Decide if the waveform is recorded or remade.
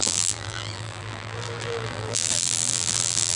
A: remade